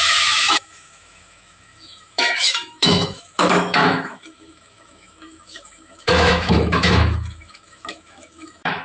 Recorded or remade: remade